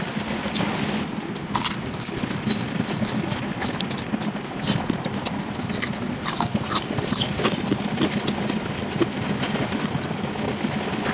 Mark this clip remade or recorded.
recorded